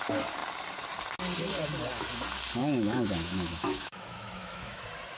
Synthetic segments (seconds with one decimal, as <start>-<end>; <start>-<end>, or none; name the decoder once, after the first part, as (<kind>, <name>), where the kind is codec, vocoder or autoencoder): 2.6-4.8 (autoencoder, DAC-VAE)